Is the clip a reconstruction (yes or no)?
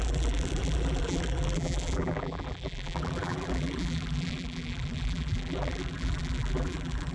yes